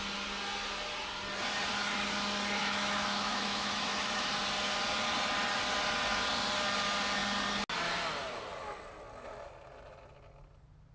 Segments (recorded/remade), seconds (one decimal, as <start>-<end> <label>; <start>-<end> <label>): 0.0-2.6 recorded; 2.6-4.3 remade; 4.3-10.9 recorded